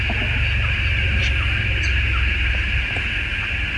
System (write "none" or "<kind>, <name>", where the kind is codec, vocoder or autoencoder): none